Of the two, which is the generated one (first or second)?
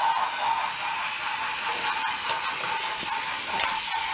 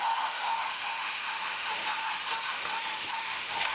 second